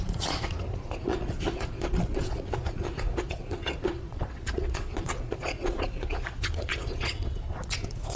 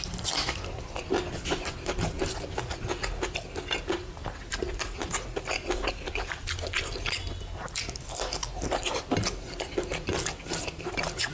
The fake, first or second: first